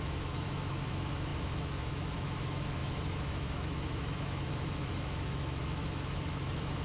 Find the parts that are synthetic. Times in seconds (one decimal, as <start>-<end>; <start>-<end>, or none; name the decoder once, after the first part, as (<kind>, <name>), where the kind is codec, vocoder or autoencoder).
0.0-6.8 (autoencoder, DAC-VAE)